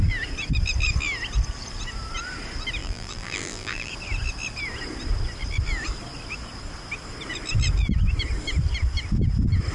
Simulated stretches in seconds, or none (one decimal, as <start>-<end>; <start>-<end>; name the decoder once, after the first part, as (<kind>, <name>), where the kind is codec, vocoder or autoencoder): 2.8-3.9 (vocoder, BigVGAN v2)